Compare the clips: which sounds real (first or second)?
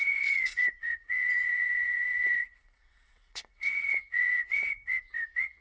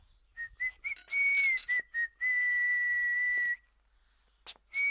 second